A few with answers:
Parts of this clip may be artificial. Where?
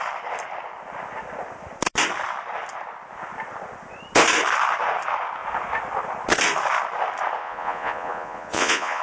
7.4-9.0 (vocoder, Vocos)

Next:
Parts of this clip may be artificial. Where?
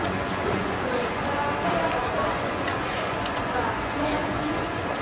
0.0-1.5 (vocoder, Vocos); 2.0-5.0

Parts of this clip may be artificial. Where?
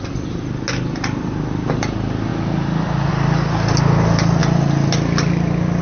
none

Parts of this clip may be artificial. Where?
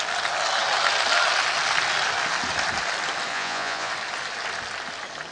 3.3-3.9 (vocoder, Vocos)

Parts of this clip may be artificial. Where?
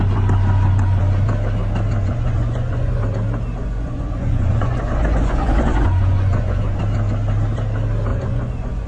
2.0-3.0 (vocoder, Vocos); 3.6-6.8; 8.1-8.9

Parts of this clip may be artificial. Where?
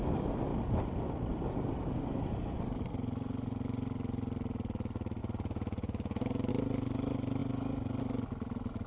5.2-6.5 (vocoder, Vocos)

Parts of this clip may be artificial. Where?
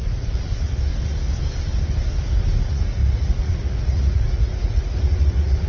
0.0-0.9 (vocoder, Vocos); 2.6-5.7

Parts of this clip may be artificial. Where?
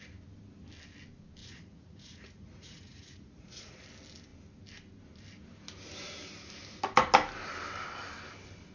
1.4-3.8 (vocoder, Vocos)